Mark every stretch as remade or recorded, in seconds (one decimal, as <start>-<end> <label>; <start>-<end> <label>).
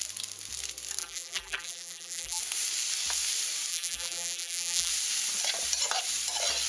0.0-1.0 recorded; 1.0-2.4 remade; 2.4-3.7 recorded; 3.7-4.9 remade; 4.9-6.7 recorded